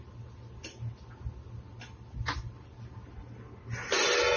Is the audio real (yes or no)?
yes